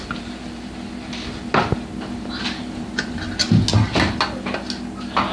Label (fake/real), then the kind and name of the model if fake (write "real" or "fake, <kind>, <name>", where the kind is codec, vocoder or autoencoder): real